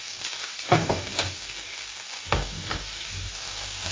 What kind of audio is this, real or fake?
fake